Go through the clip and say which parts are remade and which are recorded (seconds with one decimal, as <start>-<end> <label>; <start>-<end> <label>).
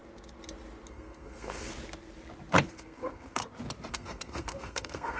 0.0-0.9 recorded; 0.9-1.7 remade; 1.7-2.7 recorded; 2.7-3.4 remade; 3.4-3.9 recorded; 3.9-5.2 remade